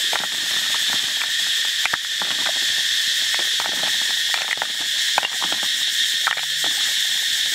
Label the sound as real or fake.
real